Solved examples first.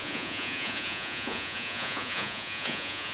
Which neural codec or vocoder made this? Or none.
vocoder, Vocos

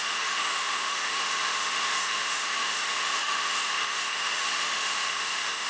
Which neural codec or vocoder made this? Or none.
autoencoder, DAC-VAE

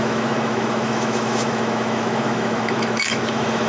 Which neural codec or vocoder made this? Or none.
autoencoder, DAC-VAE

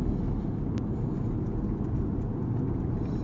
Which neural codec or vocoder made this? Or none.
none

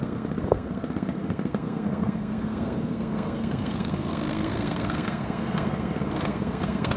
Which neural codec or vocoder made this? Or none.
codec, SNAC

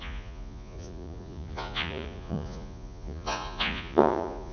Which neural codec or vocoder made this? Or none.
vocoder, Vocos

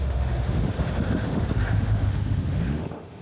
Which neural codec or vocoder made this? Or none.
autoencoder, DAC-VAE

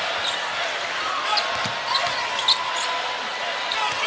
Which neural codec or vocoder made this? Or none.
none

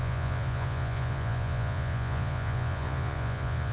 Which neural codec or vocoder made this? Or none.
vocoder, Vocos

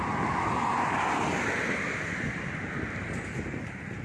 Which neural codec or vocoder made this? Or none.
none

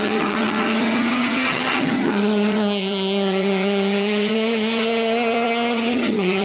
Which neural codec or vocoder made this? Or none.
vocoder, HiFi-GAN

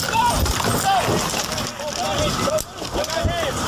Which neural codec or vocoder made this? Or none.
none